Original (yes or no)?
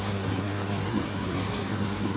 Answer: no